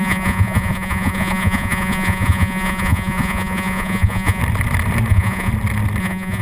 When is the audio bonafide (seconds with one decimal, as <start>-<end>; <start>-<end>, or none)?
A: 4.4-5.1; 5.5-6.0